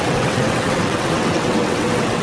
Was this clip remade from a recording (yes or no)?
yes